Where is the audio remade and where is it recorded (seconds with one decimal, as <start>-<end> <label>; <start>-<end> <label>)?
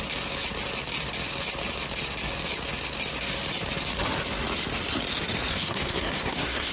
0.0-5.5 recorded; 5.5-6.7 remade